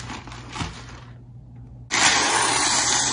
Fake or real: real